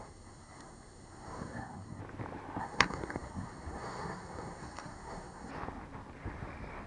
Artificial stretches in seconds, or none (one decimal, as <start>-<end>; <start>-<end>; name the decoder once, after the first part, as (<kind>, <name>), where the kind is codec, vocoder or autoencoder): 0.0-2.0 (codec, SNAC); 2.6-5.5